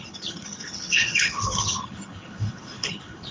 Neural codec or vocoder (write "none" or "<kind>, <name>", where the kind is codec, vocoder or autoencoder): codec, HILCodec